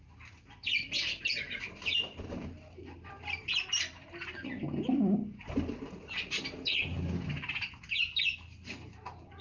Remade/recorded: recorded